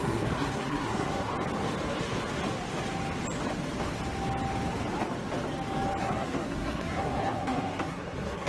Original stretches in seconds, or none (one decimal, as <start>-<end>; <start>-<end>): 1.3-6.0

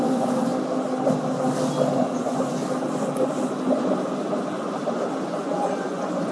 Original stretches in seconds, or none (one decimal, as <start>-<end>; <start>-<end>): 0.5-1.9; 2.6-5.1

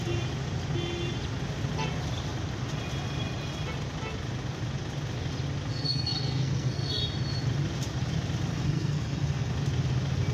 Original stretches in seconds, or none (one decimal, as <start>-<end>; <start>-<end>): 0.0-5.7; 7.0-8.5; 9.5-10.3

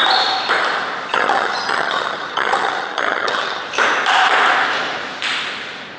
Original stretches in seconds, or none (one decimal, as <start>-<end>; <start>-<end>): 0.0-1.1; 3.6-6.0

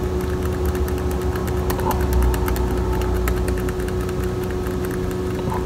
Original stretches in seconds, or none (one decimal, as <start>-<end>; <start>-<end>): 0.0-5.7

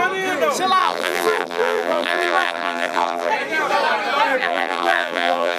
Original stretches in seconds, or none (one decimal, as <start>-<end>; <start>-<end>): 0.0-0.8; 3.3-4.4

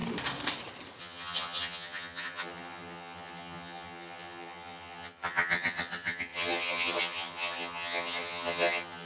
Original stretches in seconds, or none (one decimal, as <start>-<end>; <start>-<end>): 0.0-1.0

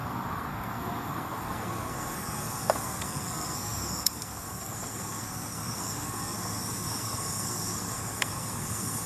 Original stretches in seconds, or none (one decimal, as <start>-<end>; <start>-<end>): none